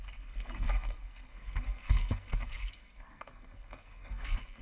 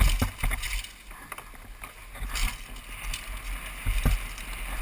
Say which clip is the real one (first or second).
second